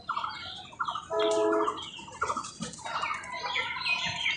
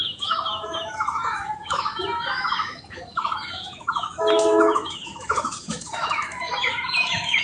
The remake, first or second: second